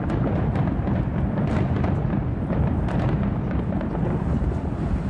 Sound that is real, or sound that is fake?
real